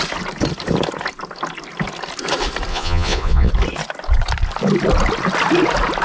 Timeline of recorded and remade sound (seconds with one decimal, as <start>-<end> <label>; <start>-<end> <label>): 0.0-2.7 recorded; 2.7-3.5 remade; 3.5-6.0 recorded